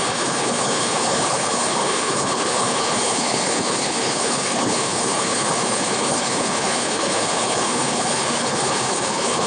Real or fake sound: fake